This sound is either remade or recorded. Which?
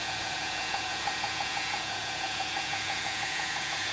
remade